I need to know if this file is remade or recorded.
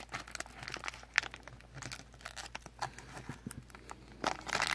recorded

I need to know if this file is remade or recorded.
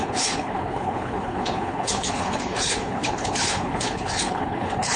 remade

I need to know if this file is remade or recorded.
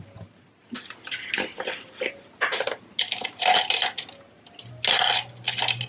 recorded